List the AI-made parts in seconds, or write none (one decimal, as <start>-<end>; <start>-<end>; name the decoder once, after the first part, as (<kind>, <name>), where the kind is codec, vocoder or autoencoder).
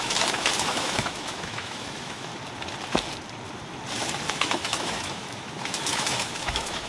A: 0.0-2.3 (autoencoder, DAC-VAE); 4.3-6.9